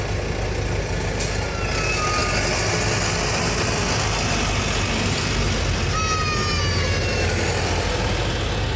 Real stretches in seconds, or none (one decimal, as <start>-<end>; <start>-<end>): 0.0-8.8